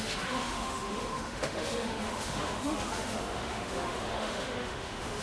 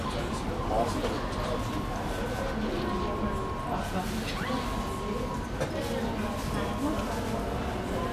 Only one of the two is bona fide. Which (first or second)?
second